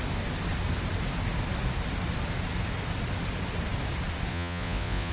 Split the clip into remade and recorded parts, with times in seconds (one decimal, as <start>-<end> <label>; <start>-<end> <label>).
0.0-4.3 recorded; 4.3-5.1 remade